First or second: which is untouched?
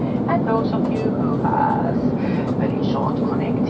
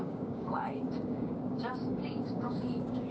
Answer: first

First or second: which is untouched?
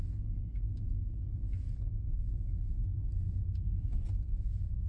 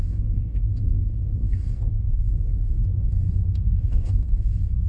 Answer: first